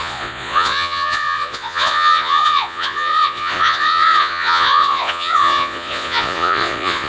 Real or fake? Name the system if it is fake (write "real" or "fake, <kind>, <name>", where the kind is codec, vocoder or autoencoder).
fake, vocoder, Vocos